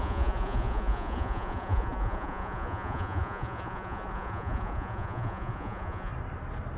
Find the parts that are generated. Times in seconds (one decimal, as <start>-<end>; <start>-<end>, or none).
0.0-6.1